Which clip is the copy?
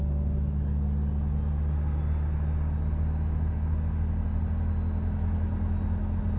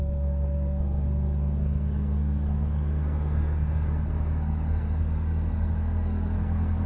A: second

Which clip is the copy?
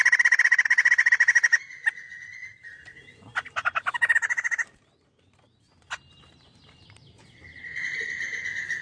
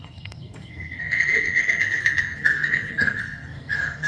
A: second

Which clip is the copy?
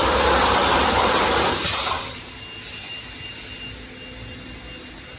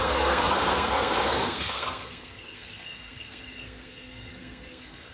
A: second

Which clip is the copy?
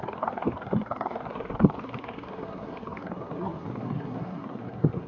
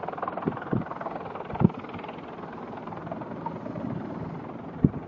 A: first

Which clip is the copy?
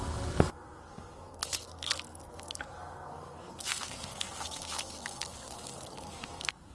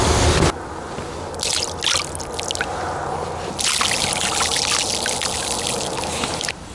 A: first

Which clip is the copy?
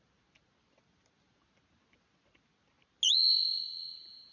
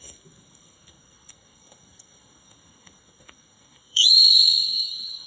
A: second